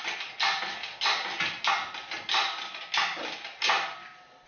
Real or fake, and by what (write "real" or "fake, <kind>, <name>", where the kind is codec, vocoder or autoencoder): real